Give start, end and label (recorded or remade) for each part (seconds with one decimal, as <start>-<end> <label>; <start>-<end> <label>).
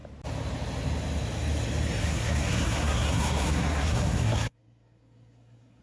0.0-2.0 recorded; 2.0-5.8 remade